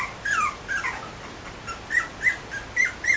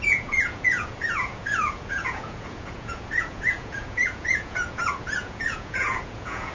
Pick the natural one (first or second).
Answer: first